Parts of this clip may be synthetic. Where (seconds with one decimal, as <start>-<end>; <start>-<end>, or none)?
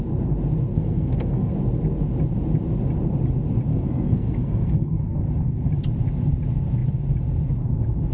0.7-1.5; 3.7-5.2